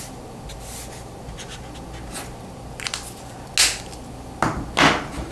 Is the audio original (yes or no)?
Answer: yes